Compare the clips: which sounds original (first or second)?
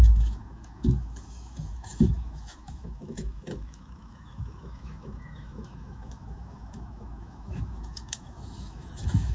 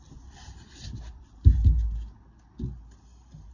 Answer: second